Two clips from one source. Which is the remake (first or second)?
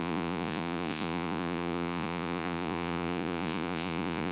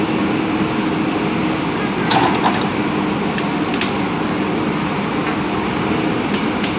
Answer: first